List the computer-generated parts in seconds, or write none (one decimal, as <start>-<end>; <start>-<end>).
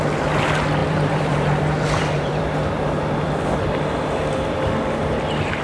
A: 0.8-2.8